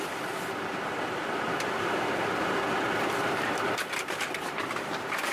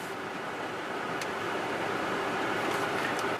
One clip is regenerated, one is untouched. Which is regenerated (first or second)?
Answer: first